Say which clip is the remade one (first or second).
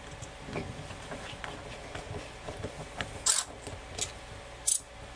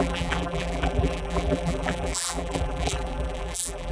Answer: second